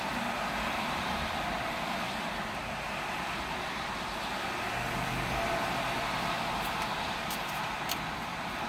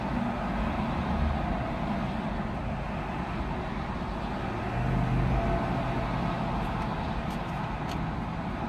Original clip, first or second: second